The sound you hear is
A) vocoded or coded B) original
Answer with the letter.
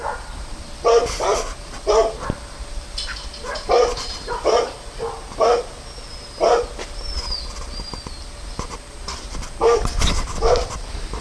B